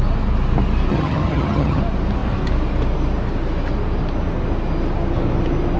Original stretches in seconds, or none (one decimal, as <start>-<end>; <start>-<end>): 0.0-0.9; 1.8-5.8